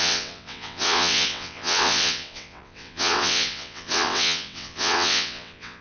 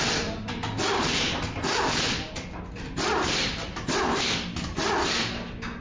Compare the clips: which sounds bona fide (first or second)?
second